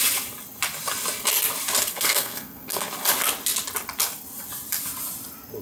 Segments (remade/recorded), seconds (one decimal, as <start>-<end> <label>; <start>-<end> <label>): 0.0-1.9 recorded; 1.9-2.9 remade; 2.9-5.6 recorded